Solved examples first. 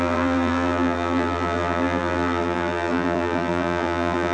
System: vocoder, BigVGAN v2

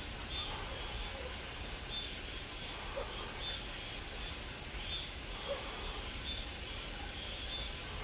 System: none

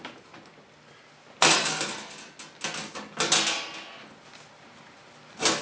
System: none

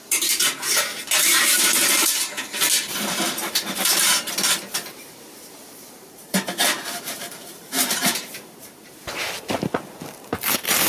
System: vocoder, BigVGAN v2